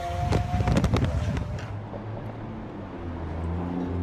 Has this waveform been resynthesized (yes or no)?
no